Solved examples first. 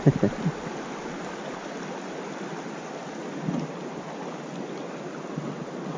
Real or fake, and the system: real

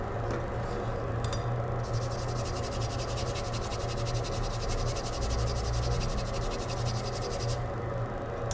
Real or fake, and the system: real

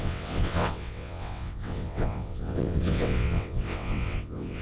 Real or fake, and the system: fake, vocoder, WaveNeXt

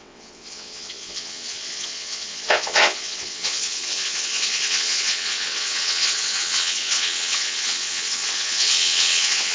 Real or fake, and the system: fake, vocoder, WaveNeXt